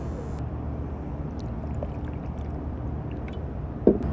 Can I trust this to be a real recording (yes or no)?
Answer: yes